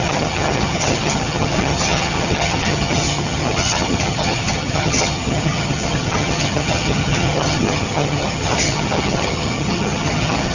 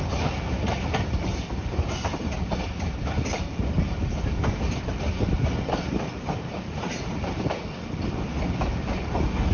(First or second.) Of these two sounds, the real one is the second